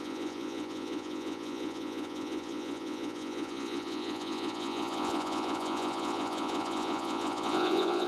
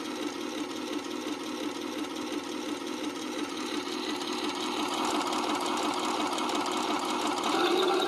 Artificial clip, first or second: first